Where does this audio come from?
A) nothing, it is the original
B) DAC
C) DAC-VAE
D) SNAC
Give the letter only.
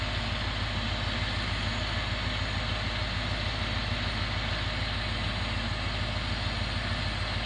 A